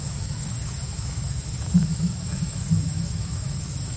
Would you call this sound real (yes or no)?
no